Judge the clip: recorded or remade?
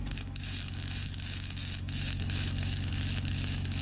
remade